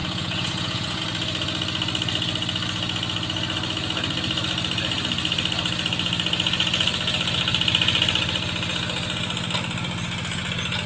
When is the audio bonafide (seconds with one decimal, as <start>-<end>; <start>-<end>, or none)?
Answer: 1.0-10.9

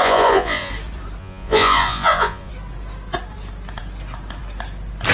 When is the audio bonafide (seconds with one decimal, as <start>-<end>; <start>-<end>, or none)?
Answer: 0.7-1.2; 2.5-5.1

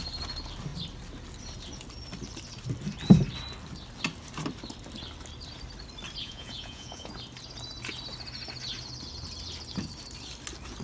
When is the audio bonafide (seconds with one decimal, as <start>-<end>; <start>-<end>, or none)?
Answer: 0.0-6.2; 7.1-10.8

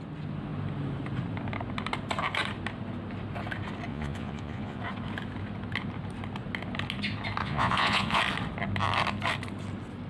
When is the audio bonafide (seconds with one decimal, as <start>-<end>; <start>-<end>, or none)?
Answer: 0.0-3.9; 4.8-7.4; 8.2-10.1

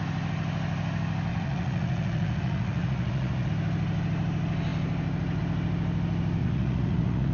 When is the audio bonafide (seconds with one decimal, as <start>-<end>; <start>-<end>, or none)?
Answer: 0.0-1.3; 3.5-6.4

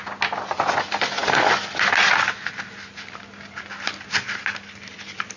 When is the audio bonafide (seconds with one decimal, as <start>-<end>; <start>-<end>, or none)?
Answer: 0.0-5.4

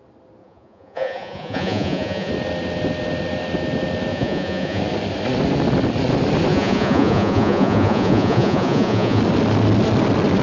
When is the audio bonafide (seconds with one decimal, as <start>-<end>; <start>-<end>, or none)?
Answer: 0.0-0.4; 2.3-4.1; 4.8-6.5; 9.2-10.4